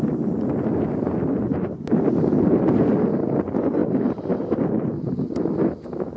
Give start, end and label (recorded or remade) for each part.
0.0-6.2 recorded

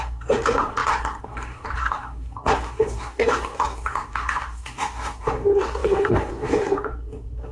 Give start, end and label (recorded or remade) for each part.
0.0-7.5 remade

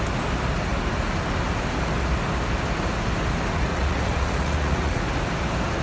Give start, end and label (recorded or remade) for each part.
0.0-3.7 recorded; 3.7-5.0 remade; 5.0-5.8 recorded

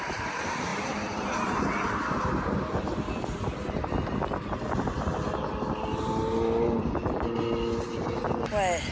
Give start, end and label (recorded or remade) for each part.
0.0-0.7 recorded; 0.7-1.6 remade; 1.6-8.9 recorded

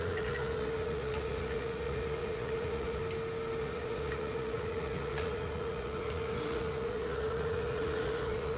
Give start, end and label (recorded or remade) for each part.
0.0-3.0 remade; 3.0-3.6 recorded; 3.6-8.6 remade

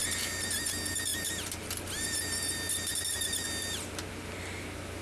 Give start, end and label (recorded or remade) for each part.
0.0-5.0 recorded

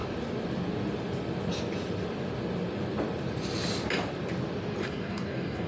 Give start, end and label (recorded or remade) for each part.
0.0-4.8 recorded; 4.8-5.7 remade

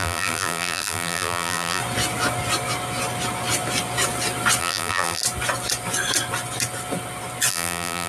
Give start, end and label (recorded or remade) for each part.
0.0-1.8 remade; 1.8-4.6 recorded; 4.6-5.2 remade; 5.2-7.5 recorded; 7.5-8.1 remade